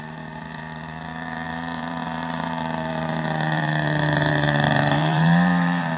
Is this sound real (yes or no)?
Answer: no